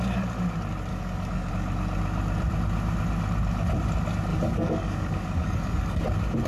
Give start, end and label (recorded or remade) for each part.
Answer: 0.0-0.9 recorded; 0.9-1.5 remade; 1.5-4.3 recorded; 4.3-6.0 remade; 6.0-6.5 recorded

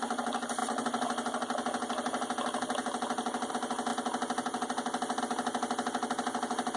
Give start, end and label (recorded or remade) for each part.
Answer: 0.0-6.8 recorded

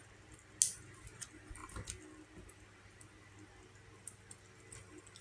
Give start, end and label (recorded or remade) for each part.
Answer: 0.0-5.2 recorded

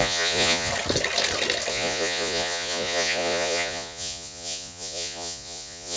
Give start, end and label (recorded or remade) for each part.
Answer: 0.0-0.7 remade; 0.7-1.7 recorded; 1.7-6.0 remade

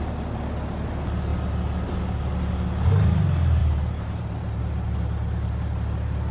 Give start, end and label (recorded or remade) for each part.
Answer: 0.0-3.6 recorded; 3.6-4.6 remade; 4.6-6.3 recorded

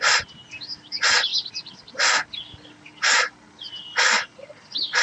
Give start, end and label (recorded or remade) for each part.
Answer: 0.0-5.0 recorded